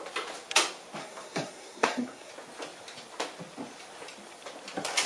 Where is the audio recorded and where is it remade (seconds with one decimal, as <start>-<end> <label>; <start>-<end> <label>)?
0.0-1.0 recorded; 1.0-2.3 remade; 2.3-5.1 recorded